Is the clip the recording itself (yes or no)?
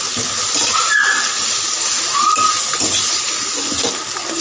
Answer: yes